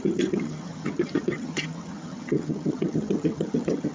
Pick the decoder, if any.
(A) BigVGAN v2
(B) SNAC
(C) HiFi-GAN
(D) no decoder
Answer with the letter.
C